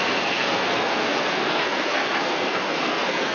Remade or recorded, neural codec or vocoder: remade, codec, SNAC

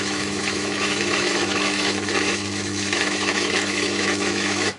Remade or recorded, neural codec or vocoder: remade, autoencoder, DAC-VAE